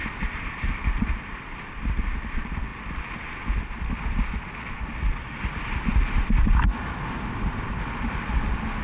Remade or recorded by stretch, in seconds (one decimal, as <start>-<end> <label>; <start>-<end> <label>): 0.0-2.7 remade; 2.7-7.8 recorded; 7.8-8.8 remade